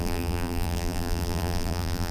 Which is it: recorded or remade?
remade